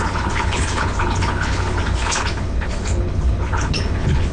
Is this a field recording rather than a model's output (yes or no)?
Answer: no